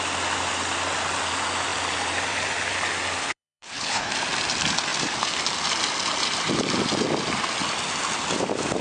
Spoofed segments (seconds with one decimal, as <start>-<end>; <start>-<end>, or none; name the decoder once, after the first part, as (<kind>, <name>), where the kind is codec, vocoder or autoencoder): 3.2-4.1 (codec, HILCodec)